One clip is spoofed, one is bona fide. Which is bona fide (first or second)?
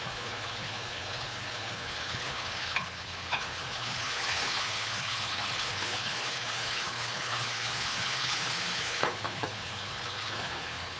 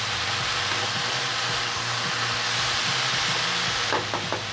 second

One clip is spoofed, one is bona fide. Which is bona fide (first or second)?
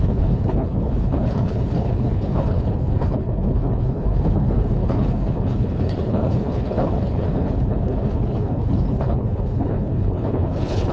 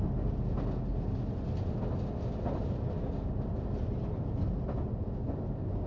second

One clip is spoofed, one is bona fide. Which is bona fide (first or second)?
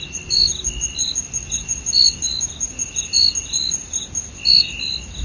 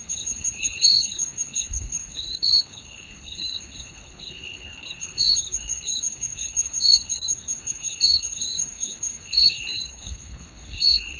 first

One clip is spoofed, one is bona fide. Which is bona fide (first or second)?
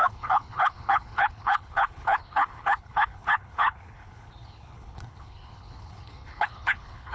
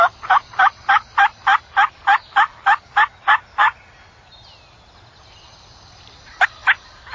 second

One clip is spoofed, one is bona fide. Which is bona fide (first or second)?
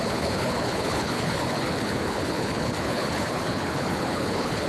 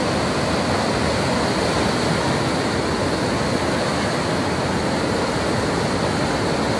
second